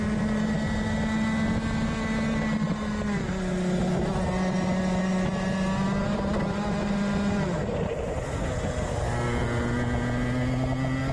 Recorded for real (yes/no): yes